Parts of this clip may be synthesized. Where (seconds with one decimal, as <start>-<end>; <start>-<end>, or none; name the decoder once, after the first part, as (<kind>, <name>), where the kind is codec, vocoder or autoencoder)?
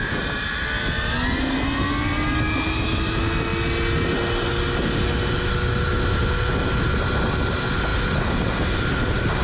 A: none